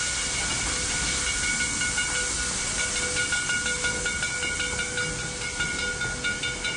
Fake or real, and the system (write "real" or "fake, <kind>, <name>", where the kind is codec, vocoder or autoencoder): real